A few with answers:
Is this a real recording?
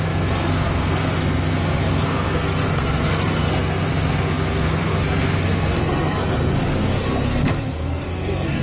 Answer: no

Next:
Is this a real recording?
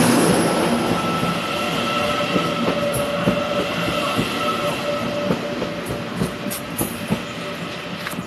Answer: yes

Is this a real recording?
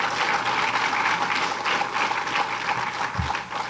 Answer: yes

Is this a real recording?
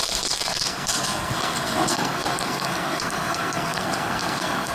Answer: no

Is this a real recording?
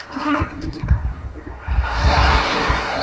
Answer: no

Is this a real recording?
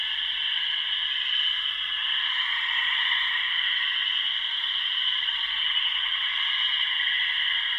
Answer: yes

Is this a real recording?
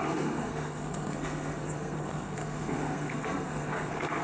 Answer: no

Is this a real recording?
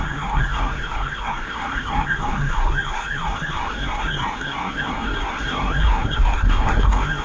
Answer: no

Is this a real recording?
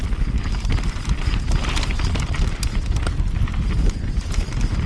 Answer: yes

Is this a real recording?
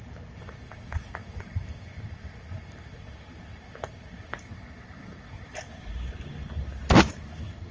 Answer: yes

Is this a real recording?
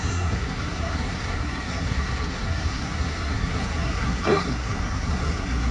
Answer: no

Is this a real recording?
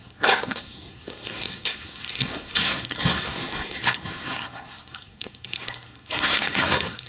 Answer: no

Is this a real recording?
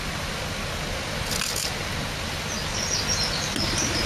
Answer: yes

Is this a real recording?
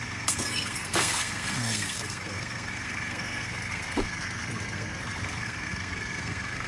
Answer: no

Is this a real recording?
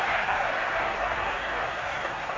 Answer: no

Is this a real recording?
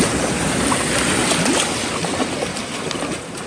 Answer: yes